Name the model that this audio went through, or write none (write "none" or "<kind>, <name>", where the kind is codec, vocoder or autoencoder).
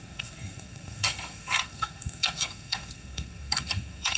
codec, SNAC